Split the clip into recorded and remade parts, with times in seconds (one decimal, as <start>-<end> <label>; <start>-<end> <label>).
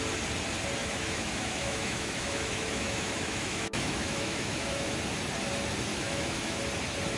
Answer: 0.0-0.8 recorded; 0.8-5.0 remade; 5.0-5.9 recorded; 5.9-6.6 remade; 6.6-7.2 recorded